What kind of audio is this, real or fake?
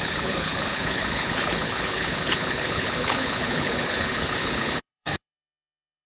fake